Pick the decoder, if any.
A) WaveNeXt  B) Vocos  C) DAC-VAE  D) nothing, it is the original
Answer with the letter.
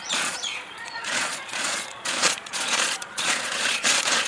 B